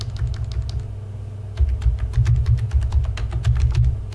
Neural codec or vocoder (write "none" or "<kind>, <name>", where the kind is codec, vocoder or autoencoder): none